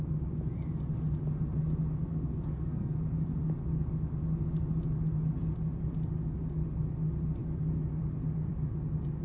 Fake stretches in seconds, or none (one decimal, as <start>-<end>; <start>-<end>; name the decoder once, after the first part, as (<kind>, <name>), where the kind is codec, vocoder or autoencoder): 2.0-2.9 (codec, SNAC)